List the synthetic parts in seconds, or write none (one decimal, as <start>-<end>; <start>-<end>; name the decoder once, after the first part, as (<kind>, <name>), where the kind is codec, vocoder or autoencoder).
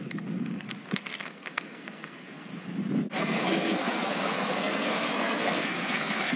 0.0-2.5 (codec, SNAC); 3.2-6.4